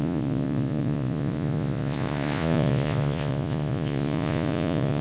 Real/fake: fake